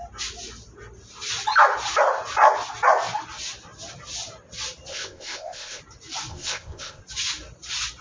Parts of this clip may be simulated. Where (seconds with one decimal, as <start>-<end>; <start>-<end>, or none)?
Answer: 4.9-5.8; 6.3-7.0